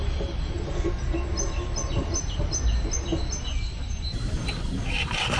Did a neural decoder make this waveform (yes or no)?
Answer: no